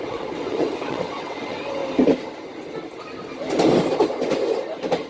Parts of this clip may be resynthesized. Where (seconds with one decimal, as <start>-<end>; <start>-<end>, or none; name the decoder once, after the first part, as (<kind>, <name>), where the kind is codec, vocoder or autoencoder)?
0.0-1.8 (vocoder, WaveNeXt)